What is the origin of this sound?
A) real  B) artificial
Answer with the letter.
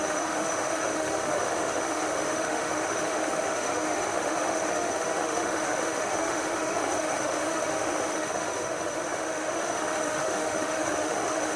B